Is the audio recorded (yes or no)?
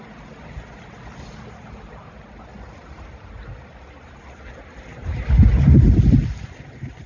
yes